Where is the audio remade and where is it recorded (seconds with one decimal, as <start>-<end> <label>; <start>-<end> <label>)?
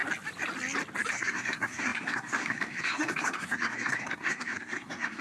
0.0-1.1 recorded; 1.1-5.2 remade